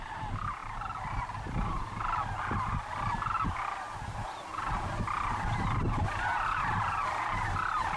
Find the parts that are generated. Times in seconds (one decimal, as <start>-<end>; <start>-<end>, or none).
none